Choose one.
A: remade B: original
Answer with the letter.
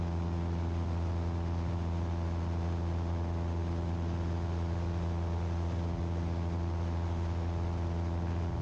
B